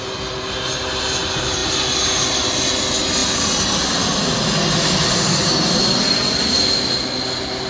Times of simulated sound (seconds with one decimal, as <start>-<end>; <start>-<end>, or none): none